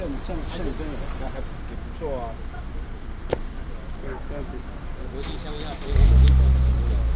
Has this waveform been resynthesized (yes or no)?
no